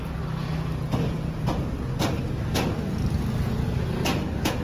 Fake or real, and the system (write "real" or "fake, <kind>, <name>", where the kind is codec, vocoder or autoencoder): real